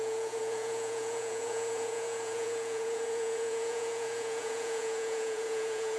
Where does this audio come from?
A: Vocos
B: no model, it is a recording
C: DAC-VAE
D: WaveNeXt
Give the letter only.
A